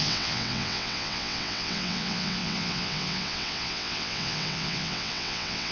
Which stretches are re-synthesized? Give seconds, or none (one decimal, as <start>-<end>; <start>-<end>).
0.0-5.7